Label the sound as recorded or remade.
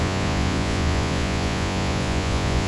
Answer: remade